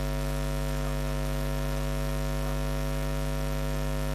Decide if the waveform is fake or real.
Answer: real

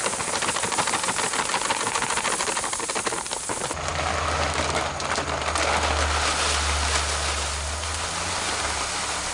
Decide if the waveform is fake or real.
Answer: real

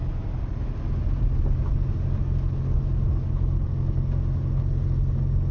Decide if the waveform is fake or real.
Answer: real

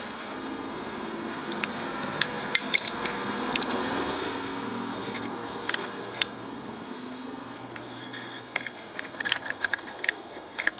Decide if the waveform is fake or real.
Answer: fake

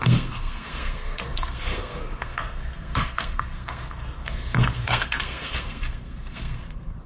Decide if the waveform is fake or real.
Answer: fake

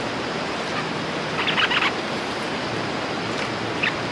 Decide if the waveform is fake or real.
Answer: real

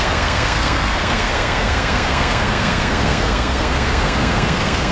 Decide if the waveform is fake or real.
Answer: fake